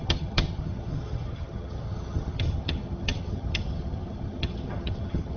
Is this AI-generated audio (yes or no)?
yes